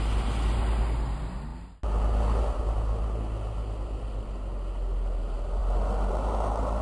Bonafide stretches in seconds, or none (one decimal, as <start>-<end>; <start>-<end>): 0.0-6.8